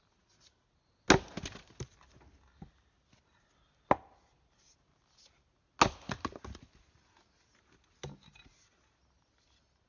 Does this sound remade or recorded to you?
recorded